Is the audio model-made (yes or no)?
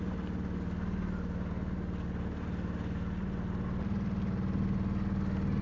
no